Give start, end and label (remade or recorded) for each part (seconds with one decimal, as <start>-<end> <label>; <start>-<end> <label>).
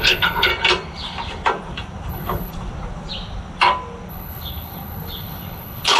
0.0-0.5 remade; 0.5-2.1 recorded; 2.1-2.5 remade; 2.5-4.1 recorded; 4.1-6.0 remade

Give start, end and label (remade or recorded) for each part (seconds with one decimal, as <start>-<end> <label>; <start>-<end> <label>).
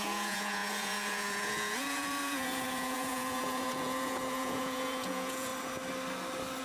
0.0-5.5 remade; 5.5-6.6 recorded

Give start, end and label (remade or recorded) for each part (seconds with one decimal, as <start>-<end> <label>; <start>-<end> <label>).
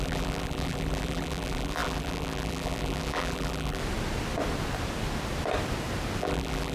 0.0-3.8 remade; 3.8-6.2 recorded; 6.2-6.7 remade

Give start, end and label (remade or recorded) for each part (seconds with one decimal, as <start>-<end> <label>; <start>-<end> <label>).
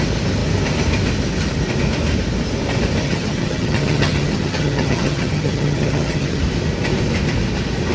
0.0-3.0 recorded; 3.0-6.4 remade; 6.4-7.9 recorded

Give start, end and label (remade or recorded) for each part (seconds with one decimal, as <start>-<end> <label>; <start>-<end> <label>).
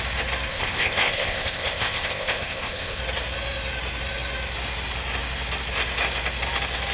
0.0-0.5 recorded; 0.5-3.0 remade; 3.0-6.9 recorded